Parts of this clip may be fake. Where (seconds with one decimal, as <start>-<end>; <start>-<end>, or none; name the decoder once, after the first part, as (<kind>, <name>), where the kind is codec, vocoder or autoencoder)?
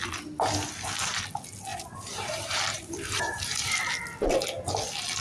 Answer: 1.7-3.7 (vocoder, BigVGAN v2)